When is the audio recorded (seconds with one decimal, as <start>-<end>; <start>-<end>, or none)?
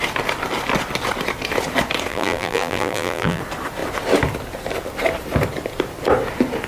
0.0-2.1; 3.4-6.7